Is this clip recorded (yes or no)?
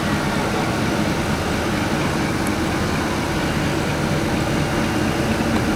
yes